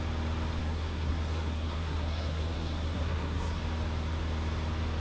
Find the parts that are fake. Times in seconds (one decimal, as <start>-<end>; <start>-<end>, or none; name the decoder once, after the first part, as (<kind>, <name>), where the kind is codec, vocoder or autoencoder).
0.6-3.6 (codec, SNAC)